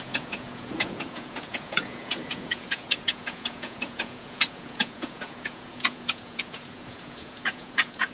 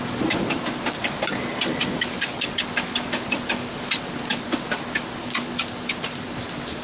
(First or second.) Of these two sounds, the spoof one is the first